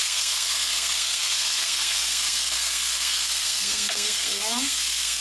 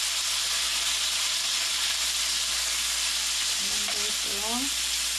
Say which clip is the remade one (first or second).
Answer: first